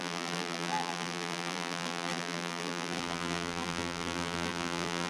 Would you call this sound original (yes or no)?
no